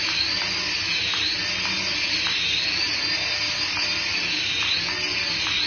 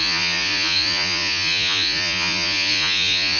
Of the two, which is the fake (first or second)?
second